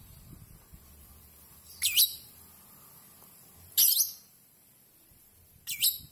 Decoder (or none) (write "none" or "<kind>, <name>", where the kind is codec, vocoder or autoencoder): vocoder, BigVGAN v2